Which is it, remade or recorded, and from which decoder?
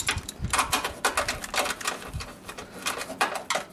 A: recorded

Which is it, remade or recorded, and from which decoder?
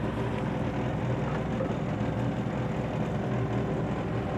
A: recorded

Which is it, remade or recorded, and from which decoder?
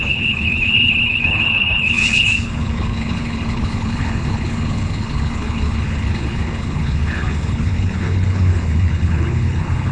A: remade, codec, HILCodec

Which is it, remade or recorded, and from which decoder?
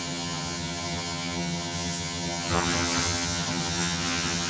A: remade, vocoder, HiFi-GAN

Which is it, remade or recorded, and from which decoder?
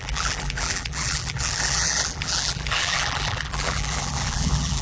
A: remade, vocoder, BigVGAN v2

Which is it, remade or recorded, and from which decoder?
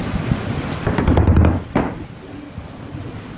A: recorded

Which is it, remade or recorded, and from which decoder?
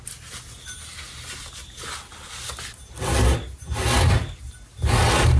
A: recorded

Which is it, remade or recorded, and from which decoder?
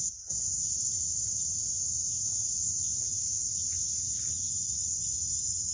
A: recorded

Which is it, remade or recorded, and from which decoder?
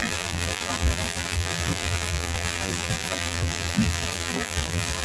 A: remade, vocoder, BigVGAN v2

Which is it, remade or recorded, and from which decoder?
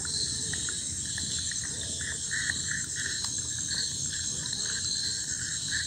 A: recorded